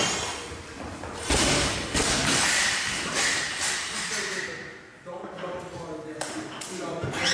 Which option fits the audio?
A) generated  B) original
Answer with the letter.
B